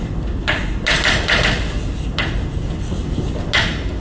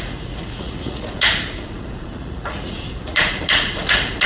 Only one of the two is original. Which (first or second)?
first